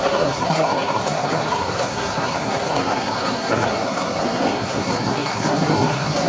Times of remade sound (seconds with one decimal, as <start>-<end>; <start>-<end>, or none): 0.0-6.3

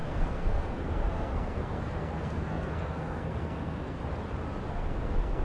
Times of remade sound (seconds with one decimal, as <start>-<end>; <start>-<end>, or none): 0.0-4.0; 4.7-5.4

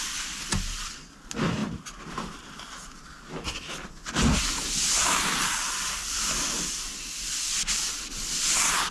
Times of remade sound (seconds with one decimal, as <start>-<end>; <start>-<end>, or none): none

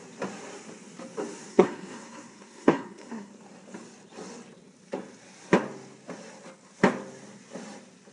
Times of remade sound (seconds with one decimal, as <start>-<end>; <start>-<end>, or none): 1.5-3.3

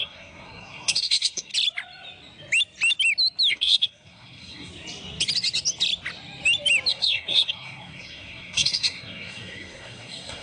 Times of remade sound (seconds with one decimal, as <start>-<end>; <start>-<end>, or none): 0.0-1.5; 3.5-4.7; 6.9-10.4

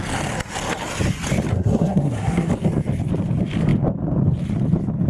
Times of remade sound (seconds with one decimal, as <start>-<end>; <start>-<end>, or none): 1.5-2.5

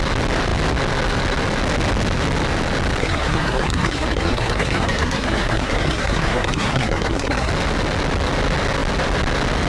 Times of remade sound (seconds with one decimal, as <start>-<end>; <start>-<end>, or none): 3.0-7.5

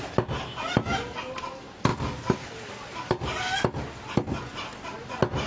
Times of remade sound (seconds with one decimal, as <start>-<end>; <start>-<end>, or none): none